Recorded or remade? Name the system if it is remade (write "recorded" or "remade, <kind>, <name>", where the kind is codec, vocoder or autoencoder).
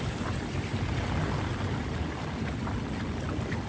recorded